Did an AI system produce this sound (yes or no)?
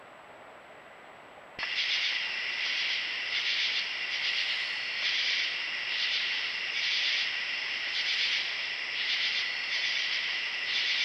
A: no